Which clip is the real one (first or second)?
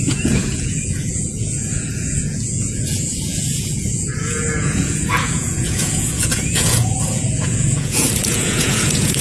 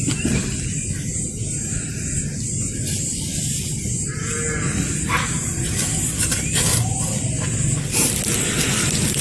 second